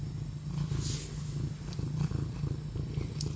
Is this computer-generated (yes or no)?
no